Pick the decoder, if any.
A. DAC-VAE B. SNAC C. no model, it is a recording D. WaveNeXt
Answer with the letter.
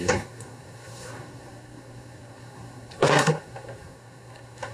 B